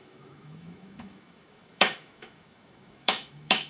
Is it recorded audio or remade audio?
remade